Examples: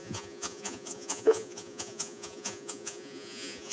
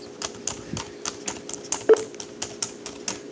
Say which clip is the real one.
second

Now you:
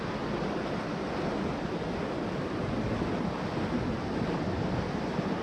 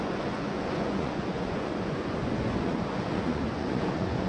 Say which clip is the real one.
first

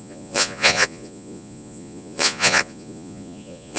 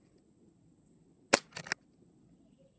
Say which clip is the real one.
second